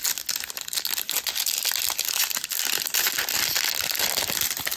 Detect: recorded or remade recorded